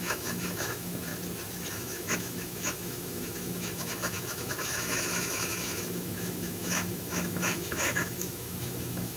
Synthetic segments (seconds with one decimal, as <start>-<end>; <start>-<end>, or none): 0.0-1.1; 1.7-9.2